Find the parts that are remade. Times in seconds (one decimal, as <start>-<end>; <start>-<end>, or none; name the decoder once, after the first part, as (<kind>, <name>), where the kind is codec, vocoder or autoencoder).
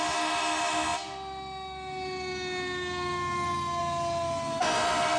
none